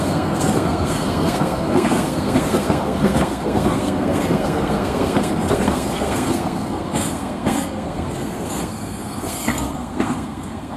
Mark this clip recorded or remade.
remade